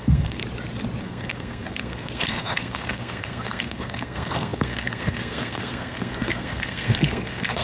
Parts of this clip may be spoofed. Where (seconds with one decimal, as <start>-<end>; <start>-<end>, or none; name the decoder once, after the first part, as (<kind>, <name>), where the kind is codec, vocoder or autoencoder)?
0.0-0.4 (codec, SNAC); 1.0-7.6